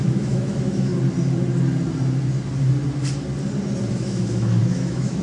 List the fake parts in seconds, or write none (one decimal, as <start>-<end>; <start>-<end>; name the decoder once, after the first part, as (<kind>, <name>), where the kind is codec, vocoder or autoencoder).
0.0-0.9 (autoencoder, DAC-VAE); 3.9-5.2